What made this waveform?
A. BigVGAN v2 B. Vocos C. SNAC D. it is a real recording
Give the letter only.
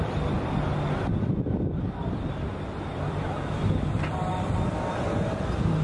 D